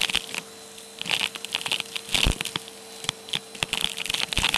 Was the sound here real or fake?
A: real